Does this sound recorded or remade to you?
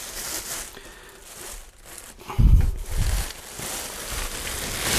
recorded